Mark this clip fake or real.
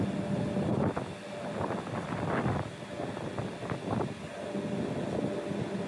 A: real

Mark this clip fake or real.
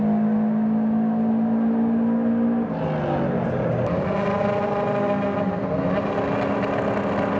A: real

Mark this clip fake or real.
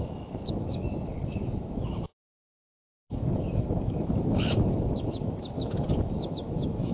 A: fake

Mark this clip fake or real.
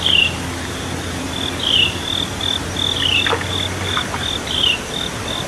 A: real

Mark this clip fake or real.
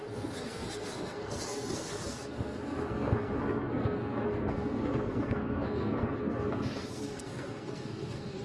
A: fake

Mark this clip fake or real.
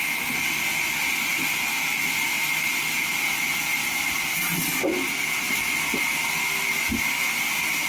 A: real